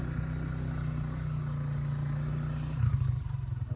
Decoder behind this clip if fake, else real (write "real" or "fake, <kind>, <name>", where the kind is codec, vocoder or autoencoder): real